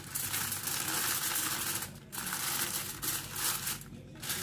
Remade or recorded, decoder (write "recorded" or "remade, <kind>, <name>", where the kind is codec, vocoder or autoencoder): recorded